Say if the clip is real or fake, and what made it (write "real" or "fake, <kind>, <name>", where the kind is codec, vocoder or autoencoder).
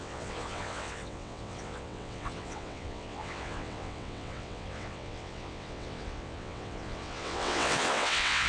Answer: fake, vocoder, WaveNeXt